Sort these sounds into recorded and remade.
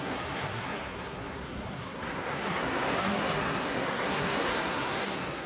remade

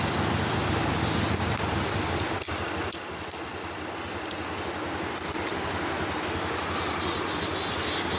recorded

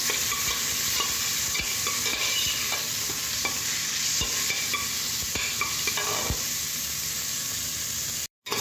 recorded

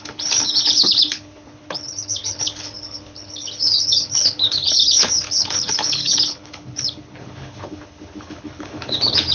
remade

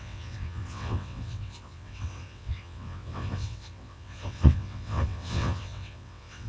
remade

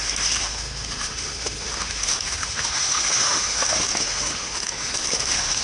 remade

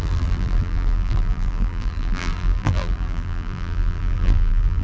remade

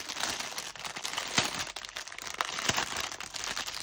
recorded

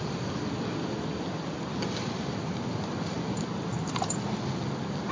recorded